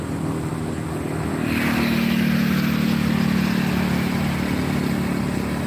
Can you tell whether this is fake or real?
real